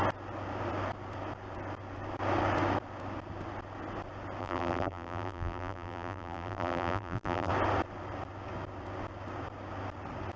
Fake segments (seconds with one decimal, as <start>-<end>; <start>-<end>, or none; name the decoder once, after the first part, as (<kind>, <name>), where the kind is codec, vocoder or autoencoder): 4.4-7.5 (vocoder, BigVGAN v2)